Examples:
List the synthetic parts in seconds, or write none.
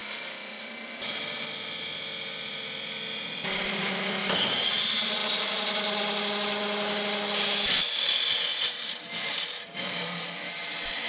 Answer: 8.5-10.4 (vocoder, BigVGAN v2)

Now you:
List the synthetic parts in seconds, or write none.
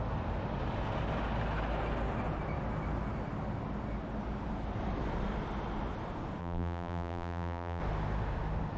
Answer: 6.4-7.8 (vocoder, BigVGAN v2)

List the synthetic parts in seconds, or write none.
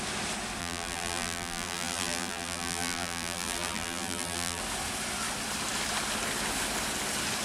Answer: 0.6-4.6 (vocoder, BigVGAN v2)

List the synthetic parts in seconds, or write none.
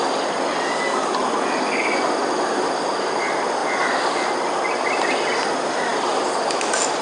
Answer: none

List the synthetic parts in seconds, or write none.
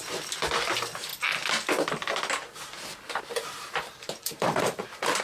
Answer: 0.0-1.1 (vocoder, BigVGAN v2); 3.2-5.2